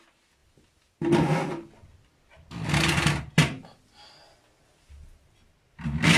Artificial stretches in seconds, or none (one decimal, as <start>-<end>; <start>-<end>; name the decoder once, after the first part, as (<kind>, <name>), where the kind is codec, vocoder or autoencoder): none